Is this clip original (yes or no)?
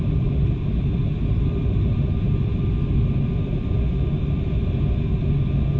yes